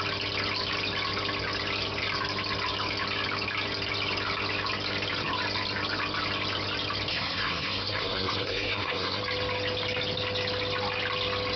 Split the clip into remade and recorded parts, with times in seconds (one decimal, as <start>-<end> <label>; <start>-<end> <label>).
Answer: 0.0-7.1 recorded; 7.1-9.2 remade; 9.2-11.6 recorded